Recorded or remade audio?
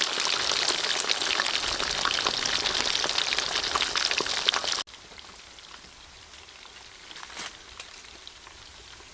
recorded